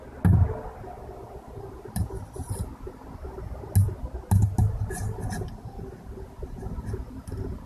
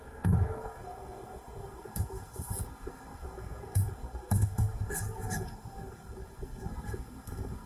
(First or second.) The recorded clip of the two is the first